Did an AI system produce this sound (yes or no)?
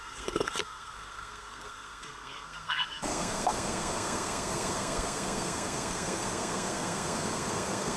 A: yes